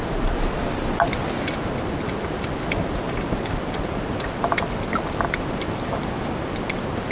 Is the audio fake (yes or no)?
no